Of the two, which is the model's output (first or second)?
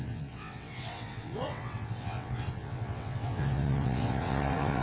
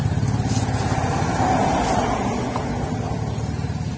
first